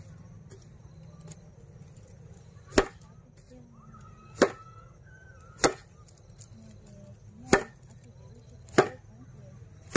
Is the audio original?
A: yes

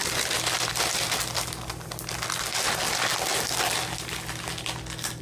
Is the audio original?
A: yes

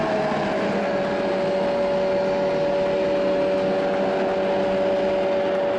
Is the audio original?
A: yes